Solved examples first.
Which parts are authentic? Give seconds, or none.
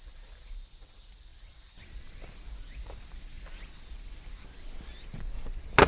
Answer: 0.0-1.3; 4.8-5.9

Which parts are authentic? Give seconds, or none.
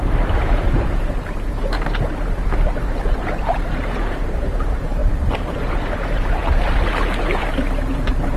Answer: 6.4-7.2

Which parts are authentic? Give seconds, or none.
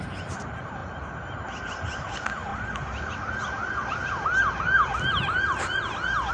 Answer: 0.8-1.6; 2.5-6.3